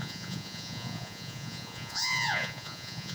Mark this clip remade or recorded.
remade